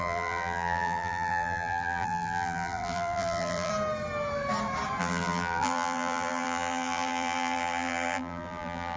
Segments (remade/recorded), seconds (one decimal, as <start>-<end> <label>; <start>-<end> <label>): 0.0-3.7 remade; 3.7-5.0 recorded; 5.0-9.0 remade